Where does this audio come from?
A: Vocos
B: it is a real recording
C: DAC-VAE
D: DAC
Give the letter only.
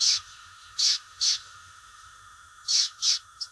C